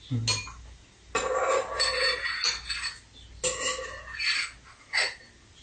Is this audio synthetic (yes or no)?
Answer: no